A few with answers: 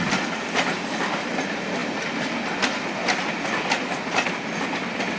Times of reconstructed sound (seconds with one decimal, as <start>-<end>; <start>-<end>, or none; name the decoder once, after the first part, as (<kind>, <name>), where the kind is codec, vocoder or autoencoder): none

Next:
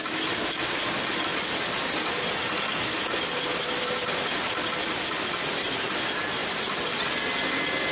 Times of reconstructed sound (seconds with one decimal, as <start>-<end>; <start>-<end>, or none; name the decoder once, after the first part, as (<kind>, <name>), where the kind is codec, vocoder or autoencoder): none

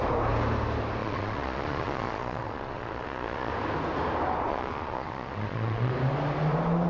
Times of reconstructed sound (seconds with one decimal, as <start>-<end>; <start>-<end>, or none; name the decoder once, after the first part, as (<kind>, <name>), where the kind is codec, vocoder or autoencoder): 1.0-3.5 (vocoder, Vocos); 4.5-5.9